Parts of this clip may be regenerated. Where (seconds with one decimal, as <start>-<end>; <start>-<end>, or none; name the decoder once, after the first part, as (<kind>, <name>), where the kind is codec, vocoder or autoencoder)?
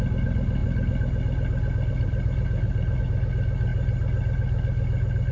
none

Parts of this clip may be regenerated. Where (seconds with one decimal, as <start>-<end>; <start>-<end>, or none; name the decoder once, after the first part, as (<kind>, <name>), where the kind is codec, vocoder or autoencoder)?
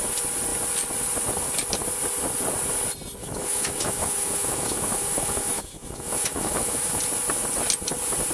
3.2-7.0 (autoencoder, DAC-VAE)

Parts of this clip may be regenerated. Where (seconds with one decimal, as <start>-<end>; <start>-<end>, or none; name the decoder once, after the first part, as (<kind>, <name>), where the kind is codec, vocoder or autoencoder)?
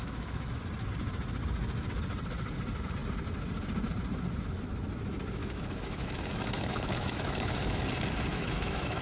0.0-0.6 (autoencoder, DAC-VAE); 5.4-7.8; 8.3-9.0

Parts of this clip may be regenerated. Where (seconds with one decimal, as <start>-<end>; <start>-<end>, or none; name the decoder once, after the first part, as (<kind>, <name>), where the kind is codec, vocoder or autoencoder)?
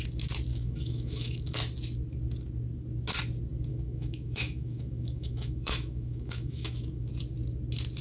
0.5-1.6 (autoencoder, DAC-VAE); 3.7-7.1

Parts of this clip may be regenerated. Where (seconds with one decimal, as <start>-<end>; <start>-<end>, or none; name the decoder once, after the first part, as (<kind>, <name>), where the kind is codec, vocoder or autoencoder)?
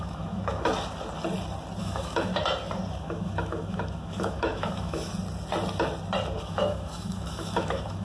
0.0-0.7 (autoencoder, DAC-VAE); 1.8-2.3; 3.0-5.1; 6.4-8.0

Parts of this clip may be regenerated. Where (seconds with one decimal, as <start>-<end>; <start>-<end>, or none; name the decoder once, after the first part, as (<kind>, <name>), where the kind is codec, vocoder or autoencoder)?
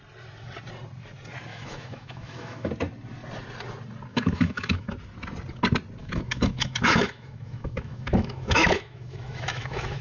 1.5-2.7 (autoencoder, DAC-VAE); 4.1-4.9; 6.0-10.0